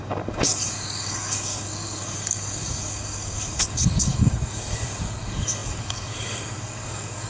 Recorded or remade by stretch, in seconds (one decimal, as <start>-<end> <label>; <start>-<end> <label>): 0.0-7.3 remade